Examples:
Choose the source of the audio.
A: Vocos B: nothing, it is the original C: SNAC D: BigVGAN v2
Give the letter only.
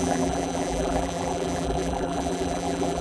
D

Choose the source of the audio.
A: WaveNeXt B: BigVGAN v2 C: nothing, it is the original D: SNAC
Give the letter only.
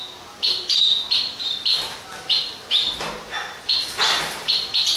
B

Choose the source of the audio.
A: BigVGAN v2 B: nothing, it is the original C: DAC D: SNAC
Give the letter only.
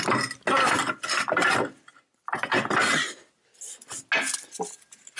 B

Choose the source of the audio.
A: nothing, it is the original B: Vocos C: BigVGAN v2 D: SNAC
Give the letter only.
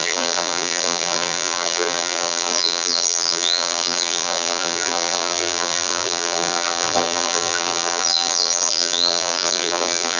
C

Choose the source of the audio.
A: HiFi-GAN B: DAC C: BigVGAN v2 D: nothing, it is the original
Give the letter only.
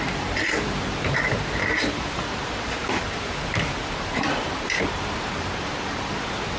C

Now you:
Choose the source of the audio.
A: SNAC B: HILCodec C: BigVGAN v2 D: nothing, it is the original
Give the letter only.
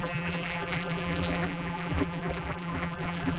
C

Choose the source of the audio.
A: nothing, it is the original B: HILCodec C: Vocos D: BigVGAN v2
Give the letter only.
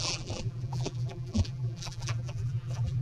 D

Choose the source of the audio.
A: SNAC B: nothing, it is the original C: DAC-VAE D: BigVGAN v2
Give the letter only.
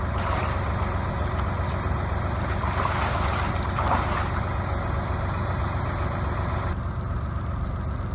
B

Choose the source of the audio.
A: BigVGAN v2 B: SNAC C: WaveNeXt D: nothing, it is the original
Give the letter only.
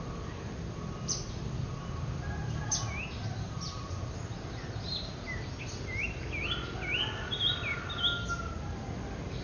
D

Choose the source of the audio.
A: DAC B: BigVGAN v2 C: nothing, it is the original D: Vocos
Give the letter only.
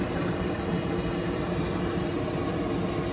B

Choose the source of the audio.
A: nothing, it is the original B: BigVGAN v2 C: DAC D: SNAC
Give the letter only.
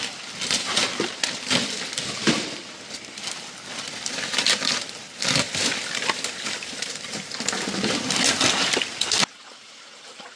B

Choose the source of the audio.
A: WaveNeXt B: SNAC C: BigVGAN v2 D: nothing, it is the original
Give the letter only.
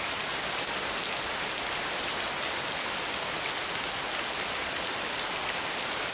D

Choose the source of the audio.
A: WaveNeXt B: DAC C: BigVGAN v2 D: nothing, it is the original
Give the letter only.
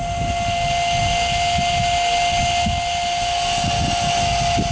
D